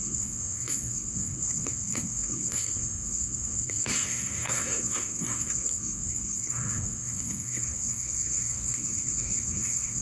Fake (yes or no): yes